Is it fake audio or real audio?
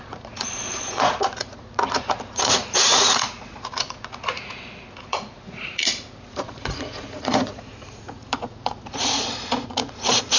fake